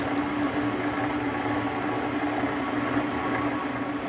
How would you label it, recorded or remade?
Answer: recorded